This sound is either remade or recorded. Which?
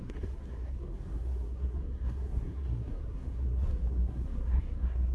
remade